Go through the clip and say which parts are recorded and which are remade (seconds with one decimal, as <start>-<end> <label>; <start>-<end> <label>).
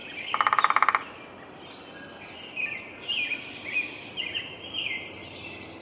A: 0.0-5.8 recorded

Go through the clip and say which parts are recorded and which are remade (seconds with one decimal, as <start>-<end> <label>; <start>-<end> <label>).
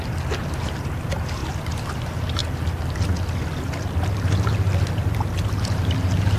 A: 0.0-2.4 remade; 2.4-5.5 recorded; 5.5-6.4 remade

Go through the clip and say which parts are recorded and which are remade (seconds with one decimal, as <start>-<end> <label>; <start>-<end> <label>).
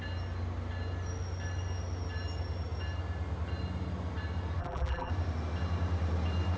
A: 0.0-4.6 recorded; 4.6-5.1 remade; 5.1-6.6 recorded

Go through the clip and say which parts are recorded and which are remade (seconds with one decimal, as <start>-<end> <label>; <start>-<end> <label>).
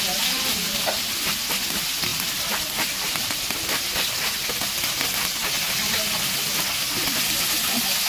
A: 0.0-2.1 recorded; 2.1-5.1 remade; 5.1-8.1 recorded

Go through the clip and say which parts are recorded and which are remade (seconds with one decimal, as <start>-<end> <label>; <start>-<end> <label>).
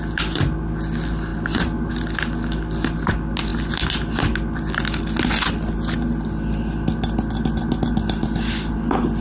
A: 0.0-1.3 recorded; 1.3-1.9 remade; 1.9-9.2 recorded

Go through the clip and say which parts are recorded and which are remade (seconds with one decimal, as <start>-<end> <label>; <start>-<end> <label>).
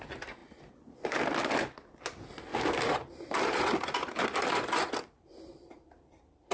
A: 0.0-2.5 recorded; 2.5-6.5 remade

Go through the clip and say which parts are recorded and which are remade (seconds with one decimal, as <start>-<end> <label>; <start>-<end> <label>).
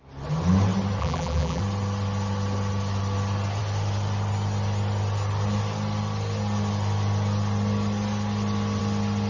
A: 0.0-1.0 recorded; 1.0-1.6 remade; 1.6-9.3 recorded